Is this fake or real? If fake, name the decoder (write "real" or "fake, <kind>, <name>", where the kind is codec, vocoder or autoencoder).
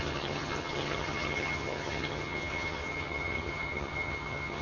fake, vocoder, HiFi-GAN